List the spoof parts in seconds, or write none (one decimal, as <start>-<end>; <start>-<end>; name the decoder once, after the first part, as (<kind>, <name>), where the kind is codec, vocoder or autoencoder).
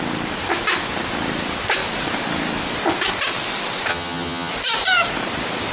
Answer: 3.9-4.5 (vocoder, HiFi-GAN)